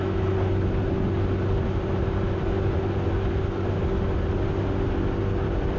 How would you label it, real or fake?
real